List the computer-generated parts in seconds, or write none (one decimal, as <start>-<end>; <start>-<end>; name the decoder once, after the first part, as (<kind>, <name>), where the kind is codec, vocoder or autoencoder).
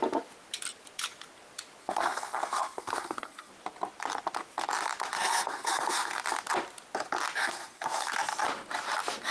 1.8-3.5 (codec, SNAC); 5.3-6.2; 7.4-8.1